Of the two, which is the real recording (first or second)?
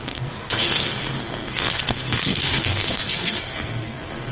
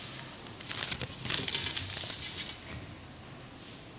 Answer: second